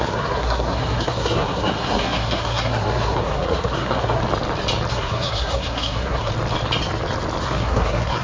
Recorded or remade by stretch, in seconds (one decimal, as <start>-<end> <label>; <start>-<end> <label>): 0.0-4.2 remade; 4.2-4.9 recorded; 4.9-6.3 remade; 6.3-7.4 recorded; 7.4-8.2 remade